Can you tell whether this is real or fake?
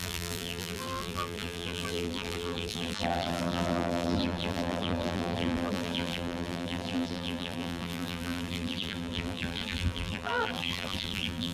fake